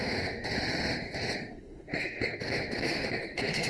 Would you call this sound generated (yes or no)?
yes